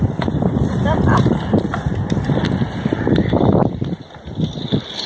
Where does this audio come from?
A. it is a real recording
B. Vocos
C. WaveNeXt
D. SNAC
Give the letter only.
A